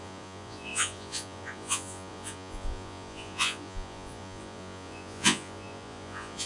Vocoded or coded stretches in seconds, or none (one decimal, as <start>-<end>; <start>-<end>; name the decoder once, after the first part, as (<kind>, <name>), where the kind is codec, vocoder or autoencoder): 0.0-6.5 (vocoder, Vocos)